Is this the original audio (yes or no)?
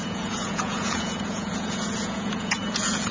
no